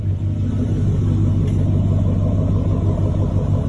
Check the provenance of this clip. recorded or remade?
recorded